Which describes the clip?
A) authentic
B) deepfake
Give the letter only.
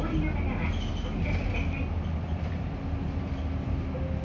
A